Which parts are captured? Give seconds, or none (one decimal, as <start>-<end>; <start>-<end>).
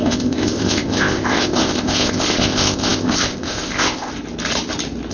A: 4.1-5.1